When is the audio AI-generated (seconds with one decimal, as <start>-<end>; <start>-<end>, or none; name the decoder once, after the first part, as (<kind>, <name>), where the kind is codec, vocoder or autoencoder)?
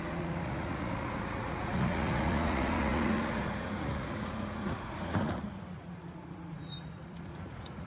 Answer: 0.0-7.9 (vocoder, Vocos)